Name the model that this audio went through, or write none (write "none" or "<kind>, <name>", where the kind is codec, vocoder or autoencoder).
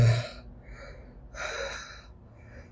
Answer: none